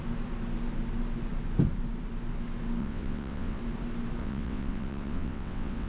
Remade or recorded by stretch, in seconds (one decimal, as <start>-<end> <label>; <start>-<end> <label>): 0.0-2.8 recorded; 2.8-3.6 remade; 3.6-4.2 recorded; 4.2-5.9 remade